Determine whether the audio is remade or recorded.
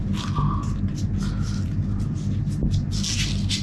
recorded